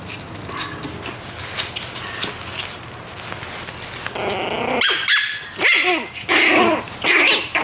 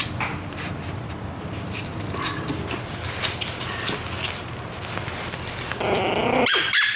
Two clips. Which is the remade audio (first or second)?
second